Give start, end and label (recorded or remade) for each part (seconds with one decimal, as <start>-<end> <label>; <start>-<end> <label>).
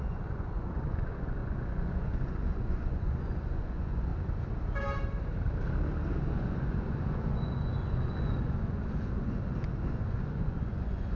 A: 0.0-4.1 remade; 4.1-6.3 recorded; 6.3-11.2 remade